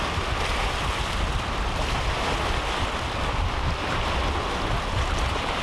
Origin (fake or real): real